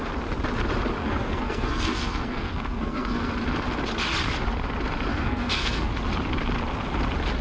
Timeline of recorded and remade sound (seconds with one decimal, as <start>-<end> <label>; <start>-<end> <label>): 0.0-1.0 recorded; 1.0-3.3 remade; 3.3-5.1 recorded; 5.1-5.9 remade; 5.9-7.4 recorded